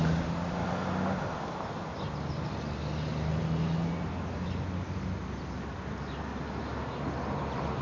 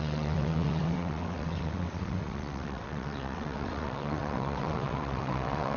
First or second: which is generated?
second